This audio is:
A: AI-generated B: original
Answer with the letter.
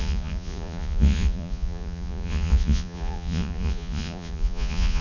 A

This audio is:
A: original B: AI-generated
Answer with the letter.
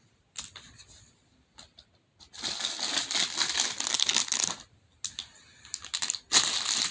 A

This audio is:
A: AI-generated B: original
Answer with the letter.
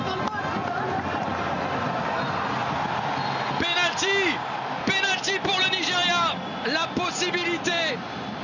B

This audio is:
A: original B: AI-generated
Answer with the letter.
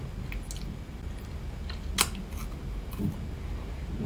A